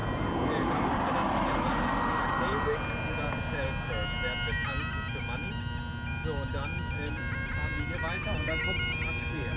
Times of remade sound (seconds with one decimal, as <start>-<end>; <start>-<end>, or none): none